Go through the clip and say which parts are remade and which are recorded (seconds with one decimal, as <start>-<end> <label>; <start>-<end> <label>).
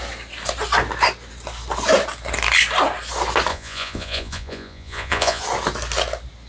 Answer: 0.0-3.5 recorded; 3.5-5.4 remade; 5.4-6.5 recorded